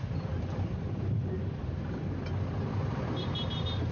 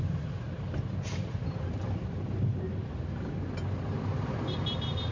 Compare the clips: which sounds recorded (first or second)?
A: second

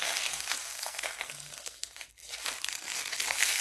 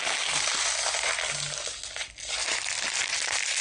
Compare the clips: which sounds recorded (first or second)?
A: second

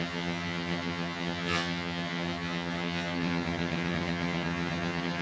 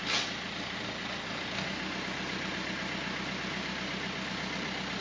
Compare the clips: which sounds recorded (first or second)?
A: second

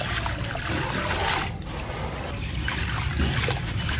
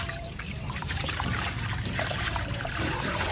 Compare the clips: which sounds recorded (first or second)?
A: first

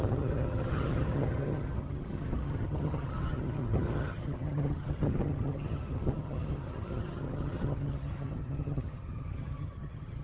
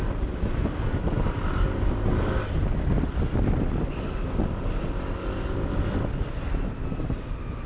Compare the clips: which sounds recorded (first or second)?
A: second